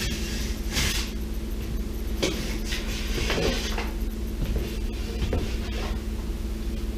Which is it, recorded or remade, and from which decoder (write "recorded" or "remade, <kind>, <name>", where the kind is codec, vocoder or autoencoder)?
recorded